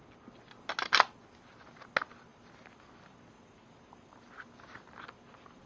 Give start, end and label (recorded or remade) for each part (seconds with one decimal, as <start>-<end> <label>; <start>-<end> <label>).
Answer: 0.0-5.7 recorded